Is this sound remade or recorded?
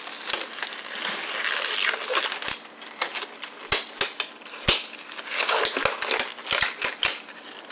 recorded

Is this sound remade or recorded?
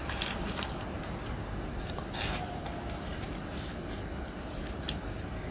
recorded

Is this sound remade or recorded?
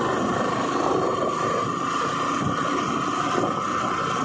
recorded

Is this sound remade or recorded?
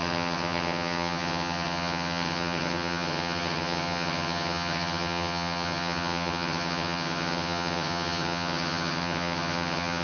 remade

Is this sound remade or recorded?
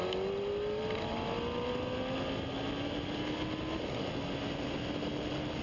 recorded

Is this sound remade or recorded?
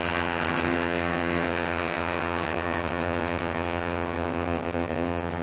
remade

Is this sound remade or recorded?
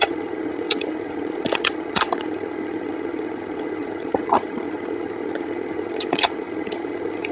remade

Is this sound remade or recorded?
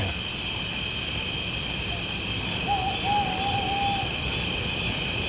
recorded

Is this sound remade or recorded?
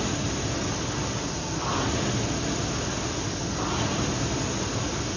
recorded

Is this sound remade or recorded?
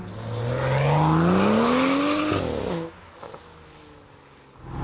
recorded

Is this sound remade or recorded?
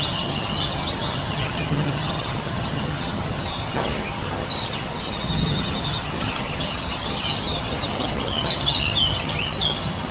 remade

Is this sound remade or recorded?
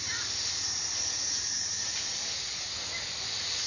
recorded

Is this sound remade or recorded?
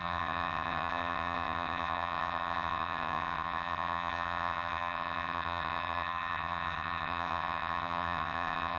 remade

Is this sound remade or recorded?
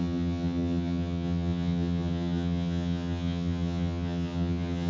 remade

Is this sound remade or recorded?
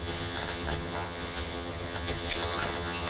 remade